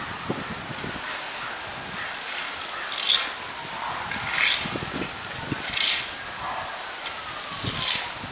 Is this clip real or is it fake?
real